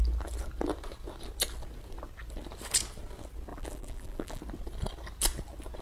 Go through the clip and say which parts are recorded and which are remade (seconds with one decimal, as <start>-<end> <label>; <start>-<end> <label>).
0.0-3.5 recorded; 3.5-4.4 remade; 4.4-5.8 recorded